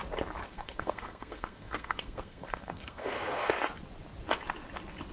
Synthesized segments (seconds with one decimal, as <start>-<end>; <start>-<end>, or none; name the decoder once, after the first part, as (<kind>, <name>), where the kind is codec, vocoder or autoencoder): 0.4-3.5 (codec, SNAC)

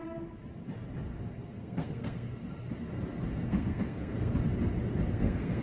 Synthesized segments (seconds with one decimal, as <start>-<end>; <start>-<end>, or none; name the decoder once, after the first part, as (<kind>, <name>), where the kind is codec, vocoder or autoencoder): 1.6-2.4 (codec, SNAC); 3.5-4.3; 5.1-5.6